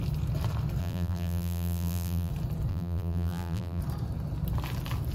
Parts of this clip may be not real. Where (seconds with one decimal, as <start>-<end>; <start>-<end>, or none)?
0.8-2.3; 2.7-3.8